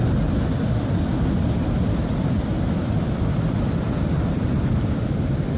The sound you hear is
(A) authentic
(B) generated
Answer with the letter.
A